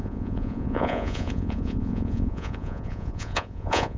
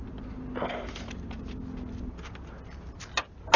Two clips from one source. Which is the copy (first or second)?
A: first